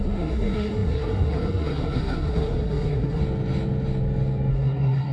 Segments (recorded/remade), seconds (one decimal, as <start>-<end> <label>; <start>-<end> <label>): 0.0-3.2 remade; 3.2-4.5 recorded; 4.5-5.1 remade